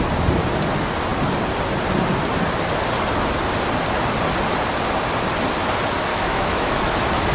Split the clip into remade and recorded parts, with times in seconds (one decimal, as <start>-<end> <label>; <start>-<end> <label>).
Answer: 0.0-6.1 recorded; 6.1-6.8 remade; 6.8-7.3 recorded